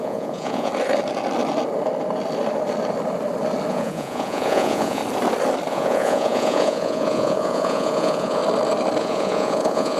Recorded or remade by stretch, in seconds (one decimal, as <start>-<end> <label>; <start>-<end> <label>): 0.0-0.7 remade; 0.7-3.7 recorded; 3.7-5.0 remade; 5.0-5.7 recorded; 5.7-8.4 remade; 8.4-9.0 recorded; 9.0-10.0 remade